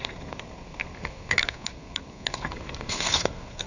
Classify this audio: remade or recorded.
remade